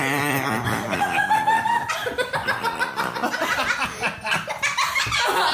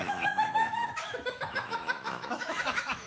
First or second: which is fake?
second